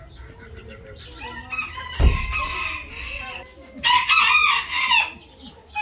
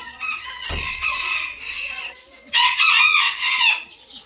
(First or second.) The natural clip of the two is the first